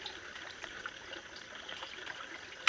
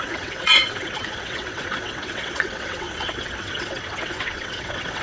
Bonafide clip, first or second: first